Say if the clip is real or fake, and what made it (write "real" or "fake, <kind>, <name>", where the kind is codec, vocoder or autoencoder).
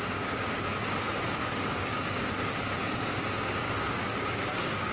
fake, codec, DAC